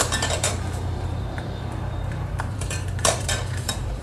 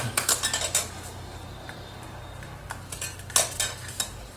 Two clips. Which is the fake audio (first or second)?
first